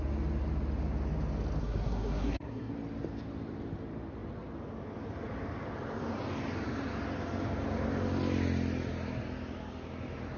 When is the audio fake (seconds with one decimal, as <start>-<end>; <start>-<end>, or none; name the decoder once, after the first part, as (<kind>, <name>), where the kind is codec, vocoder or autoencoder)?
1.6-2.7 (codec, SNAC)